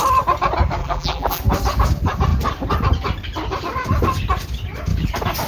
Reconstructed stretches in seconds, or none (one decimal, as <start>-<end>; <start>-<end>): 0.8-1.4